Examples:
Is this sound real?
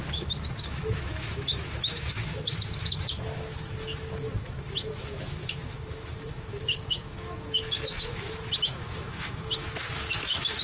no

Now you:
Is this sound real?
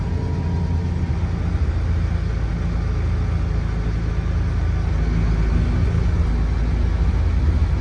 yes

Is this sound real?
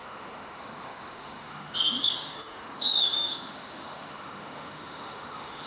no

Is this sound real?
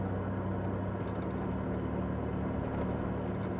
yes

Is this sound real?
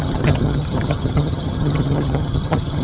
no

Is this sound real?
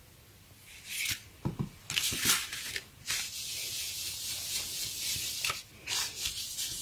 yes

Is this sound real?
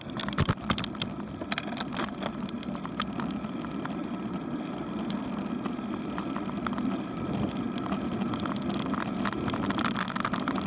yes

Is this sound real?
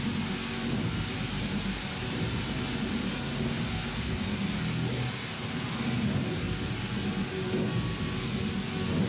yes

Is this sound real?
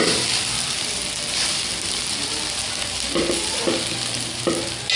yes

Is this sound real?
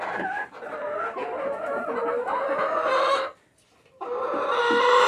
yes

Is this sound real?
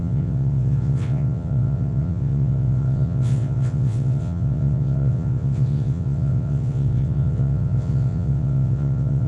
no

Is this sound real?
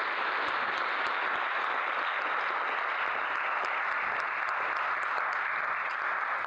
yes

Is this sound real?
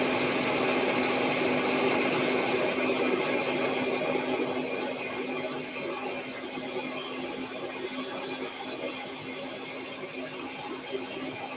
yes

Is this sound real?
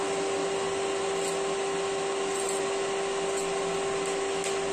yes